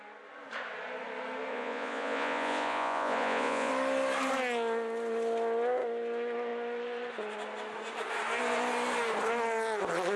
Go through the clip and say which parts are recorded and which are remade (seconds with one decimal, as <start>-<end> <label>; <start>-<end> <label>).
0.0-1.5 recorded; 1.5-3.7 remade; 3.7-10.2 recorded